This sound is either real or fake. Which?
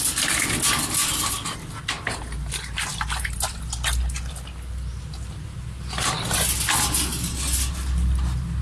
real